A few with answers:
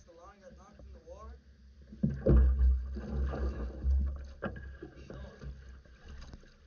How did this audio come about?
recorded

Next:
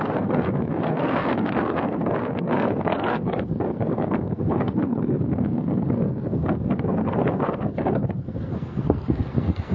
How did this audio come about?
remade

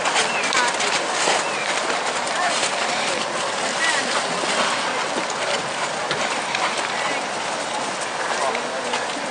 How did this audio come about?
recorded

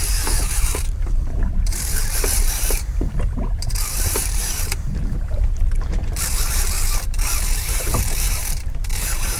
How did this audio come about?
remade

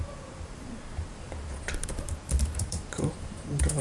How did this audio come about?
remade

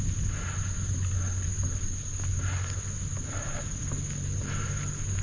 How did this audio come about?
recorded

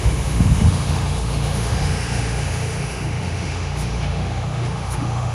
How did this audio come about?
remade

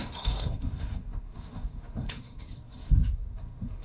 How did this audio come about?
remade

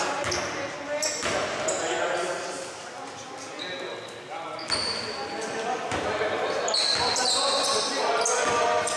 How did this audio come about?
recorded